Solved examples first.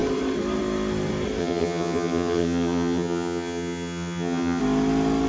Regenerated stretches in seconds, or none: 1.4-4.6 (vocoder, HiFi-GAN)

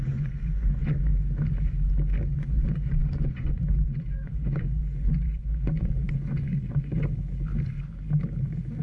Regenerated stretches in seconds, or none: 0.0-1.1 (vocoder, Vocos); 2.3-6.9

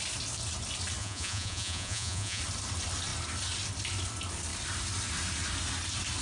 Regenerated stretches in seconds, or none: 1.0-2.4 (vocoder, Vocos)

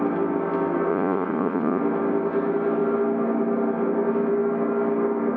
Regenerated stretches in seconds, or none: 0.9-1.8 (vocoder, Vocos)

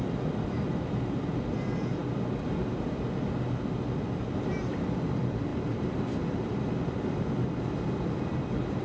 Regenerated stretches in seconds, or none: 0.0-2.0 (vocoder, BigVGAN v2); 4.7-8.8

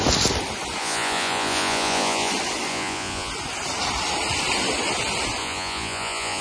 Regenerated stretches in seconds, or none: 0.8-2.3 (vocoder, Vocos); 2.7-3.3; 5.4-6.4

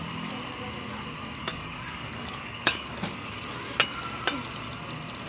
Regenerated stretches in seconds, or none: 1.4-3.4 (codec, DAC)

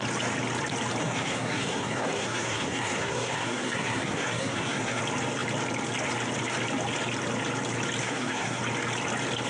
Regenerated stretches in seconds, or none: 1.0-5.0 (codec, SNAC); 8.0-8.6